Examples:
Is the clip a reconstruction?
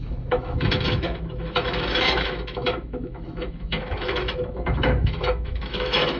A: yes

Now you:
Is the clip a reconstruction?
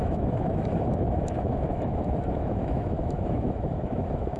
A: yes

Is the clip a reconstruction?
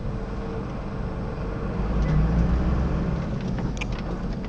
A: no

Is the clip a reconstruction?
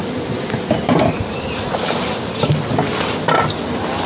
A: no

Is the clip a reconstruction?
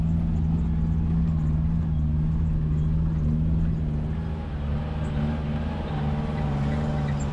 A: no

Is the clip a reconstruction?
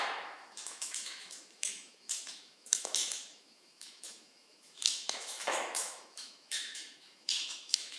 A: yes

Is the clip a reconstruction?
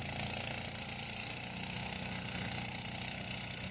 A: no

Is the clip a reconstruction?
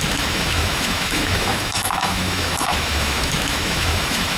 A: yes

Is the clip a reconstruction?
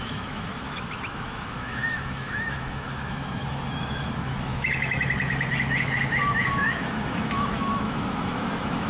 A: yes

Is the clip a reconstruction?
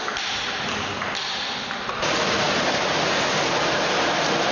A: no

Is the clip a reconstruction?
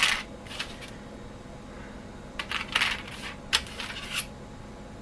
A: no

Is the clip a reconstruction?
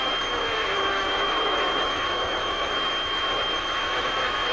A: yes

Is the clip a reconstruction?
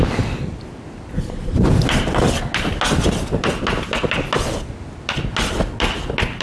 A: no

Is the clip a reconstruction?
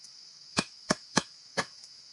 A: yes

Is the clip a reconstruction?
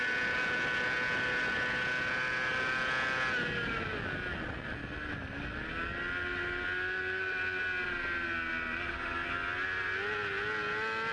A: no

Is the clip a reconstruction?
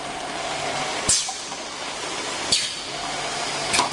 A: no